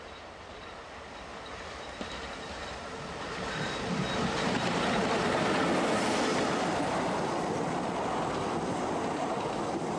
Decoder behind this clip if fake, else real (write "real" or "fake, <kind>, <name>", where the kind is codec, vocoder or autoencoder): real